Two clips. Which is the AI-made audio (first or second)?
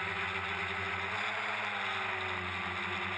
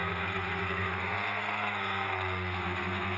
second